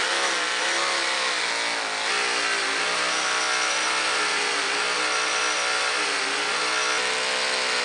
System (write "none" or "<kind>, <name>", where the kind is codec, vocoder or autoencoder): none